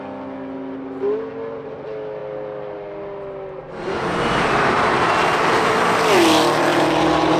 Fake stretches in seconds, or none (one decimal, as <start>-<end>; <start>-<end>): none